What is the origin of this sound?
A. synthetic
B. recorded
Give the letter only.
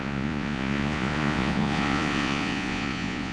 A